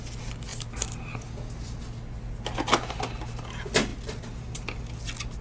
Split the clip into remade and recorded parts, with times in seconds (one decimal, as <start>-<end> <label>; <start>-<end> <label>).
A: 0.0-0.5 recorded; 0.5-2.1 remade; 2.1-5.4 recorded